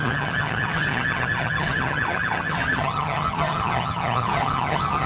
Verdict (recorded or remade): remade